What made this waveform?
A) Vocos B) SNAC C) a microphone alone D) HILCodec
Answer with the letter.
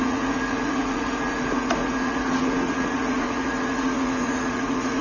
A